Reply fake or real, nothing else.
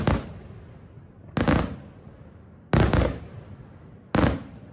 real